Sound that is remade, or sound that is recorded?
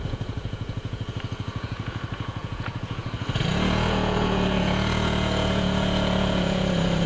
remade